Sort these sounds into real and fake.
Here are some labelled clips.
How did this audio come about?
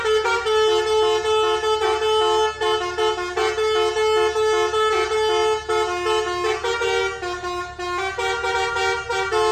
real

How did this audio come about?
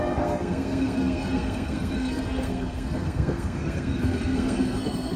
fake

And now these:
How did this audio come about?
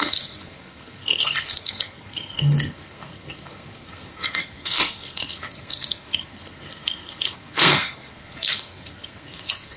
fake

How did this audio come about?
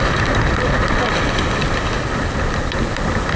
real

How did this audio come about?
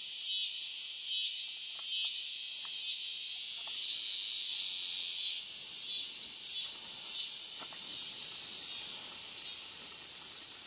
real